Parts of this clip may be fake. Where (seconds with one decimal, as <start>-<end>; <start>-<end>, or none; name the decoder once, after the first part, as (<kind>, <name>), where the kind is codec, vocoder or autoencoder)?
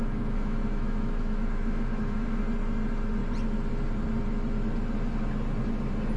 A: 0.0-2.4 (autoencoder, DAC-VAE)